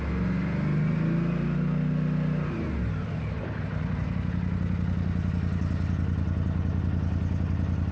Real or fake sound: real